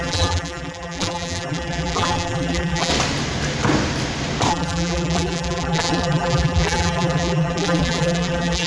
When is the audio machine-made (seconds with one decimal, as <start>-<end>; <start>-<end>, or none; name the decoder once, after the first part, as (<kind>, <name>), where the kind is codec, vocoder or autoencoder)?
0.0-2.9 (vocoder, BigVGAN v2); 4.5-8.7